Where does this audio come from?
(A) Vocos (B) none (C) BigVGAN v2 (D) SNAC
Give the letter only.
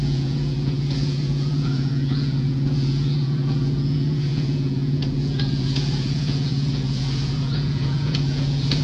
A